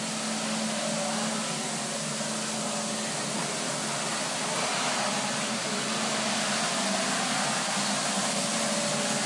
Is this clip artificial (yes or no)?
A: no